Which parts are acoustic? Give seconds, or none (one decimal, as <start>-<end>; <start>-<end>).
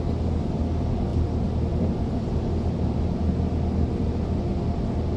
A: 0.0-1.1; 3.0-5.2